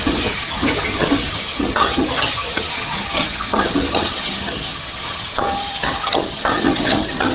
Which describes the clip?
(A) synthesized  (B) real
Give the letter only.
A